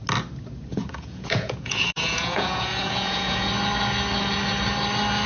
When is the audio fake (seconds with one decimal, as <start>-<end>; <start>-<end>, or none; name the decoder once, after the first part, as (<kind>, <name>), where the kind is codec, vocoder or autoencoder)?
0.7-3.5 (vocoder, Vocos)